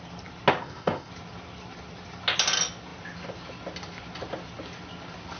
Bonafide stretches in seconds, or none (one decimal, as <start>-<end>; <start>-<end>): 0.0-0.6; 1.1-5.4